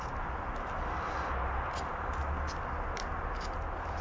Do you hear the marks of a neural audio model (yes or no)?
no